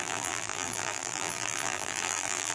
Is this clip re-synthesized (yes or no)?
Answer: yes